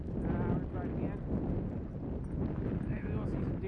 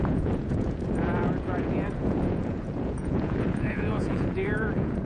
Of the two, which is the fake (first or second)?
second